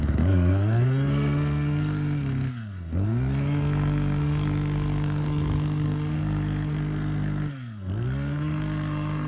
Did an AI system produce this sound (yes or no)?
yes